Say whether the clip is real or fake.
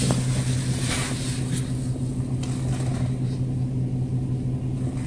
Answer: real